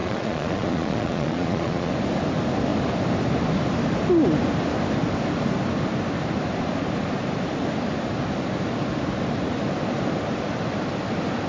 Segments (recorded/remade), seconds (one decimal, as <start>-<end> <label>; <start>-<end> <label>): 0.0-1.9 remade; 1.9-11.5 recorded